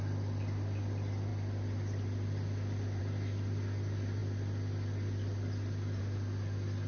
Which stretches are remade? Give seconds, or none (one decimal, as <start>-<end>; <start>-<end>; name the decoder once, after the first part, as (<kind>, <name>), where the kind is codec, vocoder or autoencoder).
none